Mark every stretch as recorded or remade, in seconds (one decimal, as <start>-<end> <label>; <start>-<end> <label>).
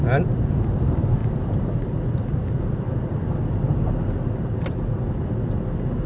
0.0-6.1 recorded